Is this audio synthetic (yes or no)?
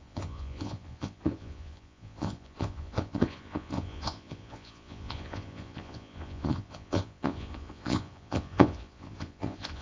yes